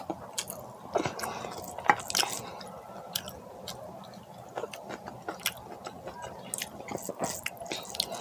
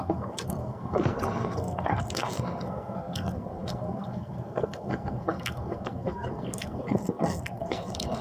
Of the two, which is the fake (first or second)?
second